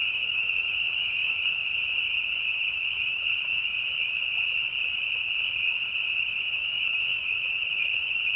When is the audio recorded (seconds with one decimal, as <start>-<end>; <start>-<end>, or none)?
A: 1.6-2.5; 3.7-6.4